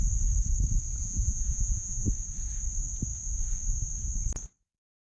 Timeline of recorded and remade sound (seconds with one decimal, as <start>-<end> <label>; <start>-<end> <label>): 0.0-1.0 recorded; 1.0-2.1 remade; 2.1-5.1 recorded